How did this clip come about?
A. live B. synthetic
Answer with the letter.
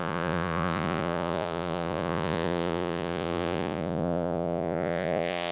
B